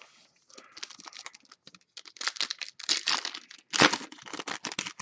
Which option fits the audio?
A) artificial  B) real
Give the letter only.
B